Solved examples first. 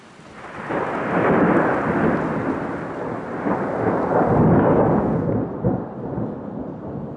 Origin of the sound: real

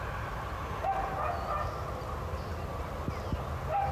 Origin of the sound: real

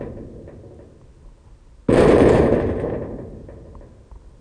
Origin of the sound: real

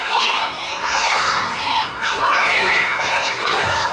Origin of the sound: fake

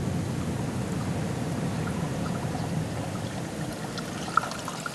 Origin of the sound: real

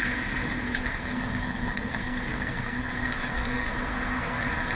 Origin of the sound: fake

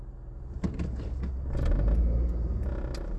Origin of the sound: real